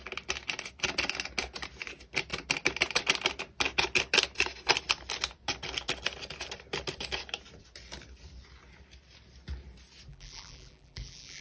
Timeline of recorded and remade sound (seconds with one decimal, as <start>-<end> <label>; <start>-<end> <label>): 0.0-10.1 recorded; 10.1-11.4 remade